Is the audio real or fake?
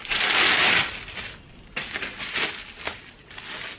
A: real